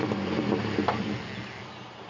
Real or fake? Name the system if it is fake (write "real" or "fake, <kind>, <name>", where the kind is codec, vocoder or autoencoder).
real